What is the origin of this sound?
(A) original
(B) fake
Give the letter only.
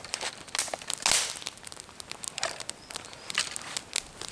A